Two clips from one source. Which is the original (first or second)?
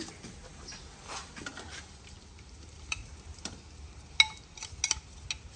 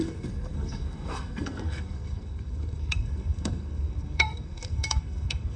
first